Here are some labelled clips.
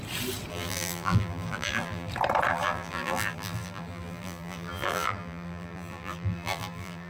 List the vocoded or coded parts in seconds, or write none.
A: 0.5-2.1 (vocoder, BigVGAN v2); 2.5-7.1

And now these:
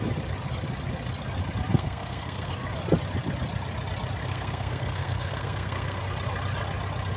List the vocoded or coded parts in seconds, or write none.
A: 1.7-2.5 (codec, SNAC); 4.2-6.0

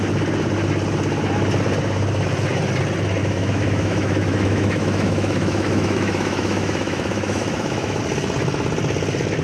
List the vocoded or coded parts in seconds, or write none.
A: 3.2-8.0 (autoencoder, DAC-VAE)

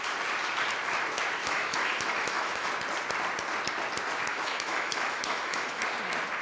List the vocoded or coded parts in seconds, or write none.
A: 1.4-2.7 (autoencoder, DAC-VAE); 4.3-5.8

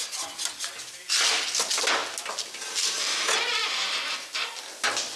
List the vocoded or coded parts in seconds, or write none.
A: none

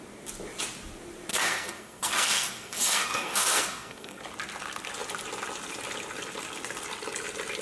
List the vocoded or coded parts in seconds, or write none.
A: 1.3-4.2 (codec, SNAC)

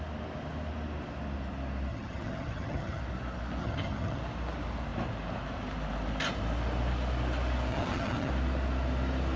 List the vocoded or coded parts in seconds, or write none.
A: 1.9-3.0 (vocoder, HiFi-GAN); 3.6-4.2; 7.7-8.3

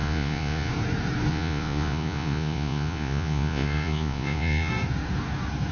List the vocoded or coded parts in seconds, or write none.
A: 0.0-0.7 (vocoder, Vocos); 1.3-4.7